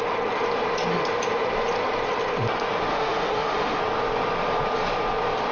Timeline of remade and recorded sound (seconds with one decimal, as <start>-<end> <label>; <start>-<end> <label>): 0.0-2.9 recorded; 2.9-3.8 remade; 3.8-5.5 recorded